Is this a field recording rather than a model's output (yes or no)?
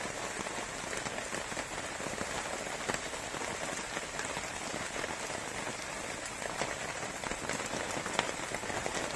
yes